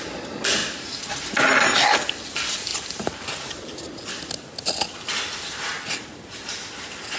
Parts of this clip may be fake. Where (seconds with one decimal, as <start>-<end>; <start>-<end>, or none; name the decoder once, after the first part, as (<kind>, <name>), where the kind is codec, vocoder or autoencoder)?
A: 5.7-6.6 (vocoder, BigVGAN v2)